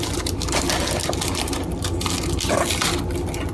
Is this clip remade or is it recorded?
recorded